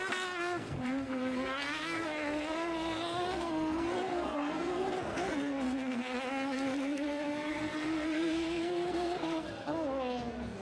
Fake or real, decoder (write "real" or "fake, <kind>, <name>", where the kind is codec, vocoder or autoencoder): fake, codec, SNAC